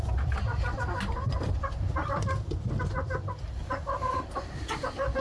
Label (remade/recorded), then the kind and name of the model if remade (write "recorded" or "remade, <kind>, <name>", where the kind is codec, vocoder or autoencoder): recorded